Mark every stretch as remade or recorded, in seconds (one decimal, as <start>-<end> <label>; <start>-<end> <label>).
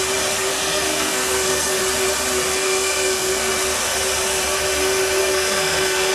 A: 0.0-0.5 recorded; 0.5-1.8 remade; 1.8-2.5 recorded; 2.5-3.5 remade; 3.5-5.2 recorded; 5.2-6.1 remade